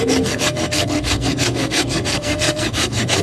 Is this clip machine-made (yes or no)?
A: yes